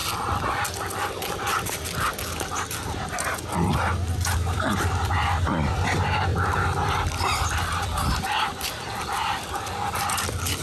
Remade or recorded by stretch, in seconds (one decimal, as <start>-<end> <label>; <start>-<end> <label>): 0.0-1.5 remade; 1.5-4.8 recorded; 4.8-10.6 remade